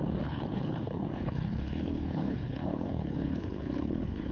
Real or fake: fake